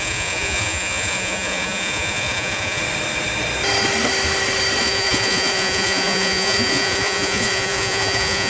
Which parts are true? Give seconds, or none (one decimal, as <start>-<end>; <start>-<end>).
2.8-4.8